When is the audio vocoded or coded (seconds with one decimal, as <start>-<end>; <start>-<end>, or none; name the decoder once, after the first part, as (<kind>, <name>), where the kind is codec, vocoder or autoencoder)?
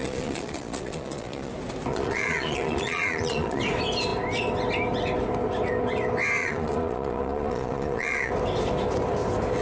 0.0-1.5 (vocoder, Vocos); 1.9-3.6; 6.4-8.3